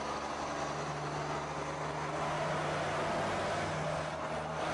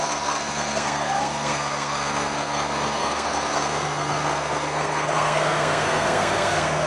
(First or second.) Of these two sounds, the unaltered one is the first